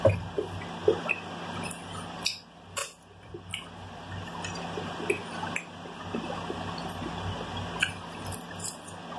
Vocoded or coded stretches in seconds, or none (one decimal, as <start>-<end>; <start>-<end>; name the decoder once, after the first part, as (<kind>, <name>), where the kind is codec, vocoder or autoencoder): none